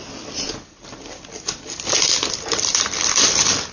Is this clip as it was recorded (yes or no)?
yes